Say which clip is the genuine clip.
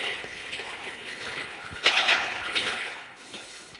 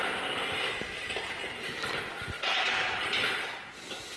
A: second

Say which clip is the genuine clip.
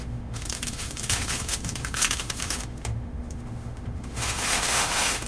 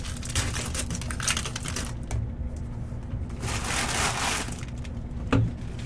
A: second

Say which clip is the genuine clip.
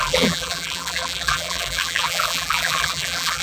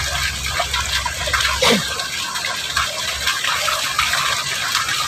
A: second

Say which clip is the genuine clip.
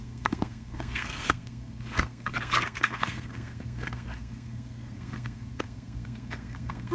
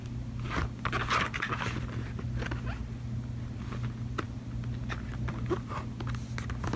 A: second